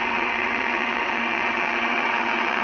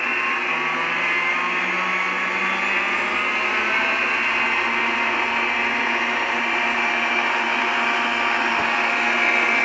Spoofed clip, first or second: first